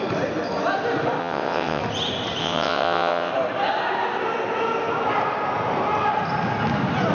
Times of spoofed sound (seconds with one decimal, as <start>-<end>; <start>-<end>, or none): 1.2-1.8; 2.4-3.3